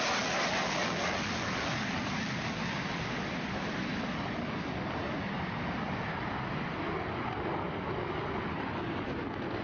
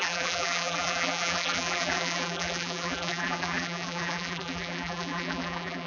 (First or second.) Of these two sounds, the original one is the first